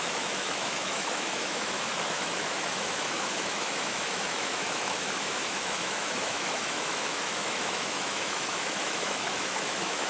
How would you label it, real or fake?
fake